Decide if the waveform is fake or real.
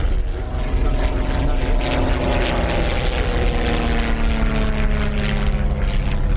real